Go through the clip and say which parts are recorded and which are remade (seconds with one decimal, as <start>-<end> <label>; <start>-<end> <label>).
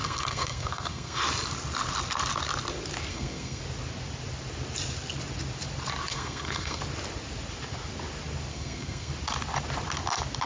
0.0-1.2 remade; 1.2-3.1 recorded; 3.1-3.6 remade; 3.6-6.1 recorded; 6.1-6.8 remade; 6.8-8.5 recorded; 8.5-9.1 remade; 9.1-10.5 recorded